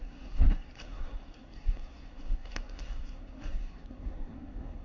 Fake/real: fake